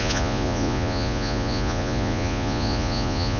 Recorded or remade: remade